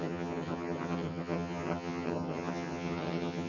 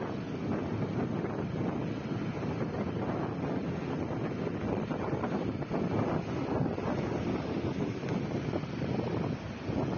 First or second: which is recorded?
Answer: second